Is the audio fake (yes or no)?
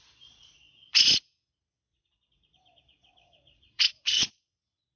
yes